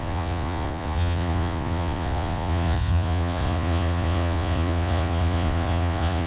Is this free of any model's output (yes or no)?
no